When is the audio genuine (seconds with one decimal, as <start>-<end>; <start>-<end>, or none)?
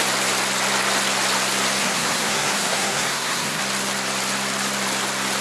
0.0-1.8; 3.6-5.4